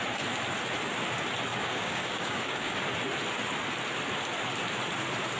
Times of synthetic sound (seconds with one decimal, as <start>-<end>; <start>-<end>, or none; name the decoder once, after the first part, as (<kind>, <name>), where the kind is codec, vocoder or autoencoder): 1.5-2.8 (codec, DAC)